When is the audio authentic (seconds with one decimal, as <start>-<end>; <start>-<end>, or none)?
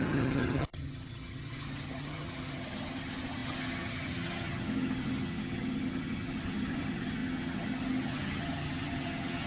none